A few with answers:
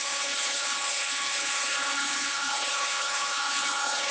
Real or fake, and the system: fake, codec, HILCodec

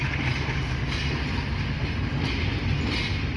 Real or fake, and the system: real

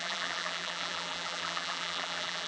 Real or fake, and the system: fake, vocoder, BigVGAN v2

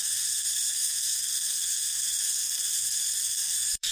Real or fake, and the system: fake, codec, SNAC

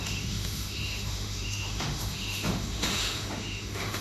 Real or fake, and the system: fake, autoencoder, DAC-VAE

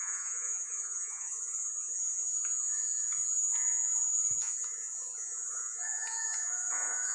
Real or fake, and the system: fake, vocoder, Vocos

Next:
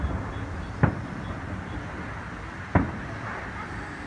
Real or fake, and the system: real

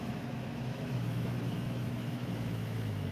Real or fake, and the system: fake, autoencoder, DAC-VAE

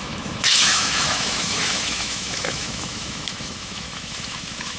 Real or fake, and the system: fake, autoencoder, DAC-VAE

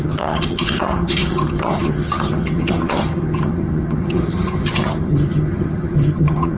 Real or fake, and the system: fake, vocoder, HiFi-GAN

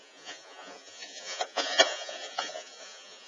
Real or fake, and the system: fake, vocoder, Vocos